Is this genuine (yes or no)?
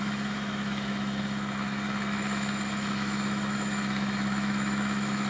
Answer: no